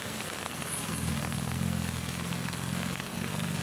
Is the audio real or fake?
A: fake